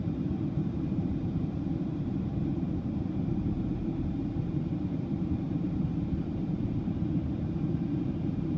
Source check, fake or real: fake